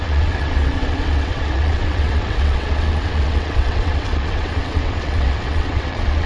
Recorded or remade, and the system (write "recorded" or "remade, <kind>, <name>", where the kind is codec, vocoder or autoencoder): remade, vocoder, WaveNeXt